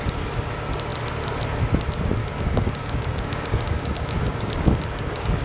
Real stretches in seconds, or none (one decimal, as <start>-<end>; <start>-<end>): 0.0-2.2

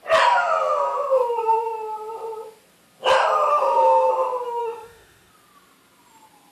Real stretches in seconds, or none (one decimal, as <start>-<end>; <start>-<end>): 0.0-3.5; 4.1-4.6; 5.3-6.5

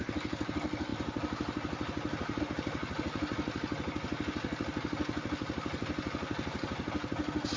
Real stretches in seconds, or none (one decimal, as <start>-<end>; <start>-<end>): 0.0-7.6

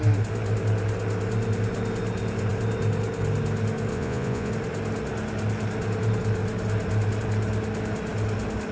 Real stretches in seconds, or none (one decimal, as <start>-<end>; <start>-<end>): 0.0-3.9; 4.5-8.7

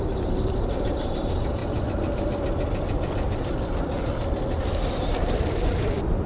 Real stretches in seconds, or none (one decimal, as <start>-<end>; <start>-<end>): 1.6-4.9

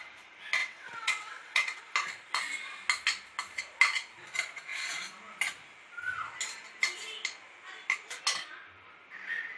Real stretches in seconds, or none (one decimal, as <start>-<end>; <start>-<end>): 0.0-0.6; 1.8-9.6

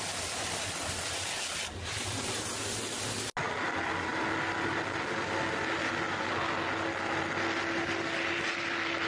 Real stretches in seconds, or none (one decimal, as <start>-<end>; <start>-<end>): 0.0-1.8; 2.5-9.1

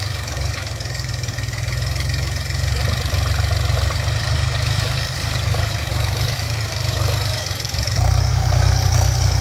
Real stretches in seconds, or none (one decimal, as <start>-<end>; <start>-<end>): 2.8-4.2